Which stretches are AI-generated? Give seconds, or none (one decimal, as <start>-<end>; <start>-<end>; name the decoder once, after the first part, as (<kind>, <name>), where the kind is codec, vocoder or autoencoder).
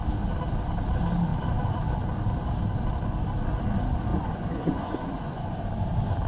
4.1-5.6 (vocoder, Vocos)